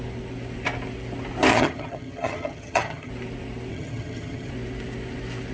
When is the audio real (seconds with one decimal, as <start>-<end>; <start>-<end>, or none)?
0.0-1.5; 3.1-3.7; 4.5-5.5